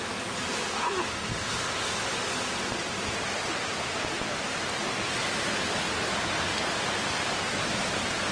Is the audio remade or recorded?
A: recorded